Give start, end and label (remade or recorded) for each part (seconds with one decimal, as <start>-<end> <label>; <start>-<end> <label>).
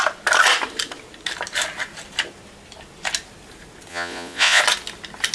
0.0-3.9 recorded; 3.9-4.6 remade; 4.6-5.3 recorded